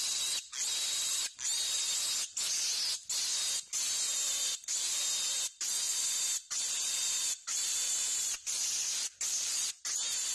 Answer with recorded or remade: recorded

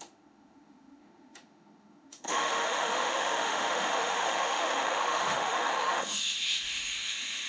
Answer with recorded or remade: remade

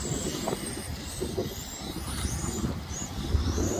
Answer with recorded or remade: recorded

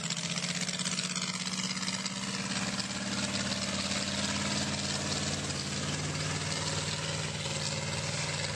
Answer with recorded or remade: recorded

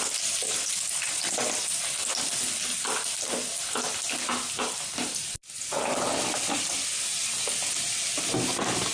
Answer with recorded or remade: recorded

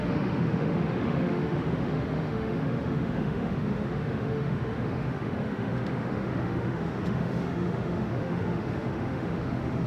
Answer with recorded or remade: remade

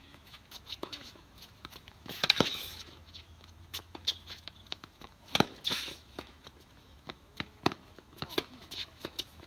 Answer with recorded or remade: remade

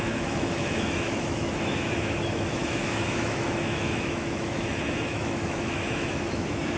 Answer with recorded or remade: remade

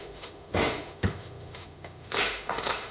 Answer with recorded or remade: remade